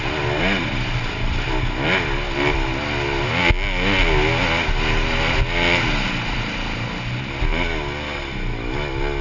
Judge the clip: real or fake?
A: real